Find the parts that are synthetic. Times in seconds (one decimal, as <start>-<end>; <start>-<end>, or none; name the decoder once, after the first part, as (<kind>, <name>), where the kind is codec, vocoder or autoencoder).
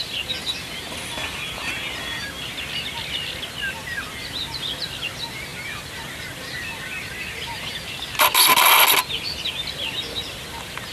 none